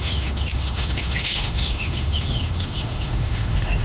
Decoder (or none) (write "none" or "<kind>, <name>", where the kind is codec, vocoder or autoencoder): autoencoder, DAC-VAE